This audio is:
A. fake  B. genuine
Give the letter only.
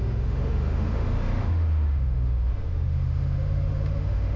A